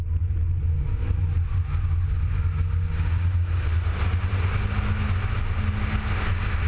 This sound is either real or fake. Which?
real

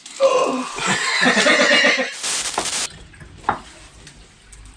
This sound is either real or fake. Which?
real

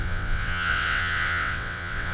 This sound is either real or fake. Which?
fake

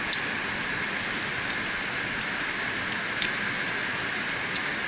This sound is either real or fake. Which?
real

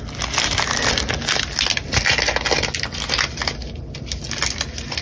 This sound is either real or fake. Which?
real